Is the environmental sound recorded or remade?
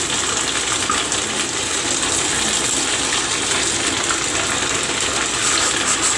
recorded